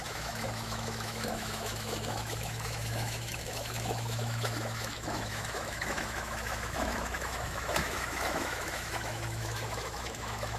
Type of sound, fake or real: fake